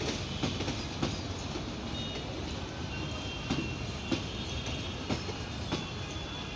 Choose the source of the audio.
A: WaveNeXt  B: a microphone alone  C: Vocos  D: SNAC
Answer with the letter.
B